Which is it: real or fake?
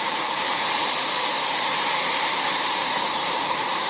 fake